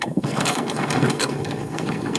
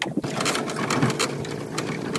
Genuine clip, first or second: second